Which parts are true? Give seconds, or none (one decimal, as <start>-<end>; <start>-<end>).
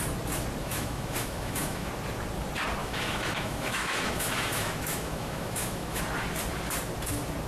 0.0-0.6; 1.9-2.8; 6.0-7.5